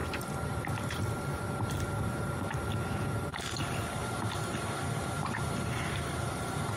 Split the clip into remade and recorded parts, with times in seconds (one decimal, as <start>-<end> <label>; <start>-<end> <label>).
0.0-6.8 remade